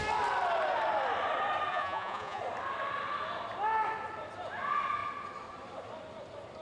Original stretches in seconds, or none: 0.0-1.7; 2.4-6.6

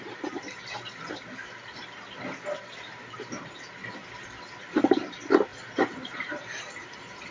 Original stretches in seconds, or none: 0.0-7.3